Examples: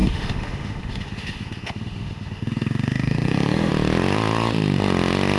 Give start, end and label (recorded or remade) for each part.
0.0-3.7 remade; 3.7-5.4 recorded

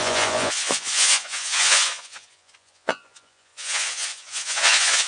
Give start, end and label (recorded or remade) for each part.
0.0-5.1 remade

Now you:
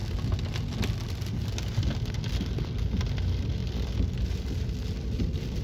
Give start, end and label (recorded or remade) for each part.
0.0-3.0 recorded; 3.0-3.6 remade; 3.6-4.2 recorded; 4.2-5.6 remade